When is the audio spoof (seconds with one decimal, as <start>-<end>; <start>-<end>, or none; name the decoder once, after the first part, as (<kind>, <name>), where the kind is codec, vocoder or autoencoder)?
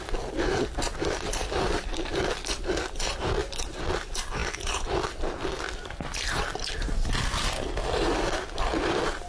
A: none